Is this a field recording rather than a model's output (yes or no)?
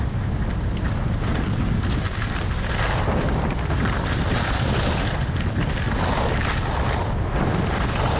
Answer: yes